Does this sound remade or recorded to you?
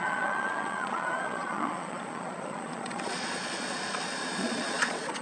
remade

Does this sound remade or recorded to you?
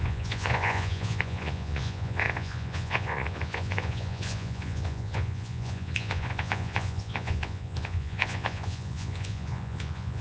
remade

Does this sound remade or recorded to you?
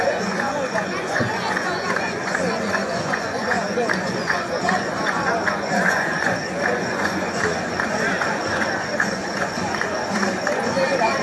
remade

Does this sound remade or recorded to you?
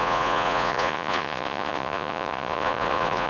remade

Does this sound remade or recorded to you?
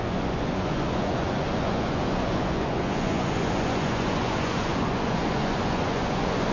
remade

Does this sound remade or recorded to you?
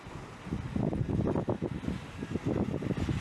recorded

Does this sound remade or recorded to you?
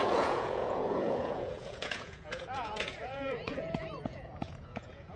remade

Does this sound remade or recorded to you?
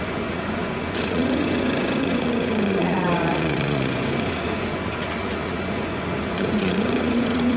remade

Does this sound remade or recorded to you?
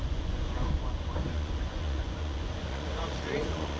remade